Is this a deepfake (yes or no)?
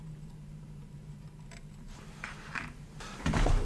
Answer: yes